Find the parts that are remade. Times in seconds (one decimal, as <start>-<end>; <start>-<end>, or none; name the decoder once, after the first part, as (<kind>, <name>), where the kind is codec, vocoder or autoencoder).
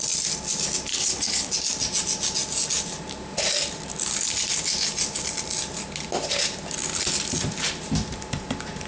0.9-1.5 (codec, HILCodec)